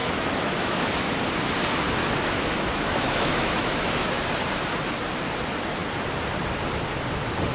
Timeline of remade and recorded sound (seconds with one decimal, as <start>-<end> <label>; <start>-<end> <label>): 0.0-1.2 remade; 1.2-2.0 recorded; 2.0-4.1 remade; 4.1-7.5 recorded